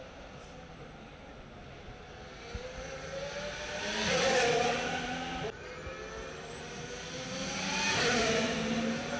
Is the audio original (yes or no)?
yes